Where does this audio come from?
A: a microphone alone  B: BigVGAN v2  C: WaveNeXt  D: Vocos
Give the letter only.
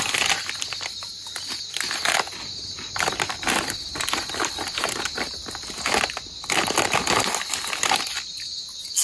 A